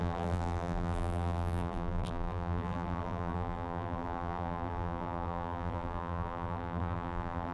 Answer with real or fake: fake